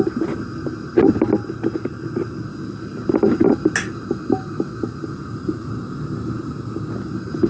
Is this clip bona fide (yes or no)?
yes